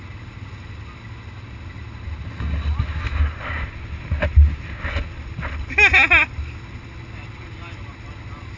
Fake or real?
real